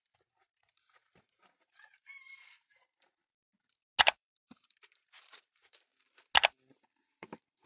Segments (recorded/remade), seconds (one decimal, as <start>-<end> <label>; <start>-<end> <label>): 0.0-3.2 remade; 3.2-4.0 recorded; 4.0-5.9 remade; 5.9-7.2 recorded; 7.2-7.7 remade